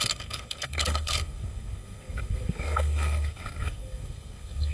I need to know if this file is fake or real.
fake